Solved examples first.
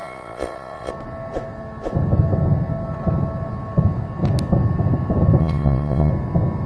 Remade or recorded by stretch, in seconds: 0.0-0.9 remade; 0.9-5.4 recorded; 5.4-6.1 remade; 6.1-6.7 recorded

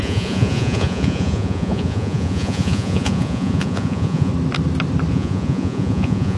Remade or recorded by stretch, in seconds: 0.0-4.3 remade; 4.3-5.1 recorded; 5.1-6.4 remade

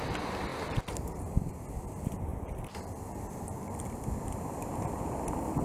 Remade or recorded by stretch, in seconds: 0.0-0.5 recorded; 0.5-1.7 remade; 1.7-2.3 recorded; 2.3-5.6 remade

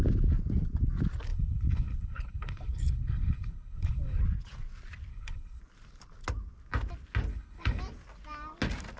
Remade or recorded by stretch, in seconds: 0.0-1.3 recorded; 1.3-4.2 remade; 4.2-5.1 recorded; 5.1-5.6 remade; 5.6-7.3 recorded; 7.3-7.8 remade; 7.8-9.0 recorded

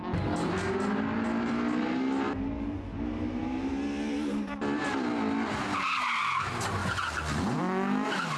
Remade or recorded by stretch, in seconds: 0.0-6.8 recorded; 6.8-7.6 remade; 7.6-8.4 recorded